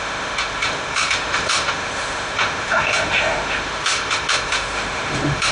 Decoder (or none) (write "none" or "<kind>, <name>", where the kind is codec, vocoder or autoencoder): autoencoder, DAC-VAE